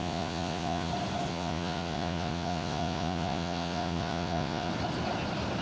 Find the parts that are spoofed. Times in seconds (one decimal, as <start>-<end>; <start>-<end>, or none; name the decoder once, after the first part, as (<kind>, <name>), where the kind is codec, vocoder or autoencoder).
0.0-0.9 (vocoder, Vocos); 1.3-4.7